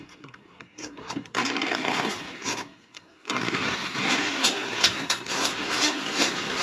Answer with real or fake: fake